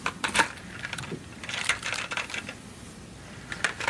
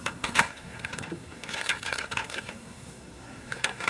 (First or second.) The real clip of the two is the first